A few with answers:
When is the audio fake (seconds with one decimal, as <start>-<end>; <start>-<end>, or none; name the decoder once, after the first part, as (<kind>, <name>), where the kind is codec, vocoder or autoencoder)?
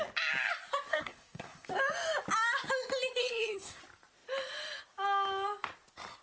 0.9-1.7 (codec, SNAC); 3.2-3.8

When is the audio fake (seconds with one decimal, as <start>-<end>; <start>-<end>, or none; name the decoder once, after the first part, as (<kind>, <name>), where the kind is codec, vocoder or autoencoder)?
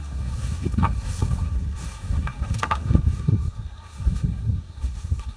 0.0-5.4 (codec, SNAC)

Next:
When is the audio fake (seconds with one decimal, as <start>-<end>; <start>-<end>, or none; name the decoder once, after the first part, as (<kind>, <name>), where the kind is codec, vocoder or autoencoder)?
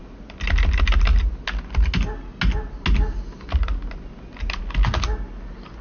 none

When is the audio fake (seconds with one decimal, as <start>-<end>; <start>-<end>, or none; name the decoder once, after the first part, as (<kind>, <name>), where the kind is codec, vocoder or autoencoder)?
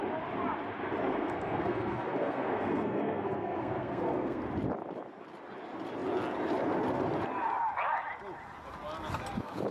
1.1-4.4 (codec, SNAC)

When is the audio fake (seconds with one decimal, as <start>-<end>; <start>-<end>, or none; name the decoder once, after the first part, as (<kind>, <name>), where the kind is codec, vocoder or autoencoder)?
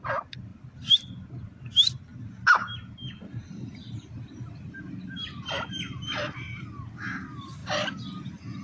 none